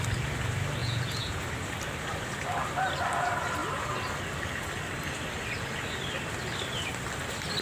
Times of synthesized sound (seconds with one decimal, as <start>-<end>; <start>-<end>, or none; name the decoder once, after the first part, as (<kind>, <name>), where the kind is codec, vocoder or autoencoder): 0.8-1.4 (vocoder, Vocos)